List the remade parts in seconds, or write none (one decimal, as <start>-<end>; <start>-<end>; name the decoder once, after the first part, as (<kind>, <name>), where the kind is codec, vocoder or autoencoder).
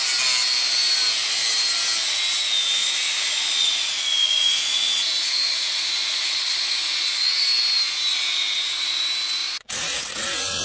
2.8-7.4 (vocoder, Vocos); 8.1-9.0; 9.4-10.6